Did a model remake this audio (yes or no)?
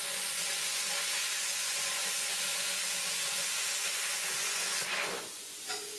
yes